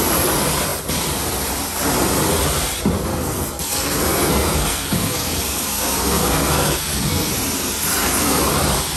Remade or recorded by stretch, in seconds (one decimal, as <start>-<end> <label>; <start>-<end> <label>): 0.0-3.1 recorded; 3.1-7.3 remade; 7.3-7.9 recorded; 7.9-8.4 remade; 8.4-9.0 recorded